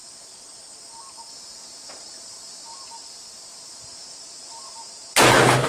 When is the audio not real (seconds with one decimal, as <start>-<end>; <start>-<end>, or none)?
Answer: none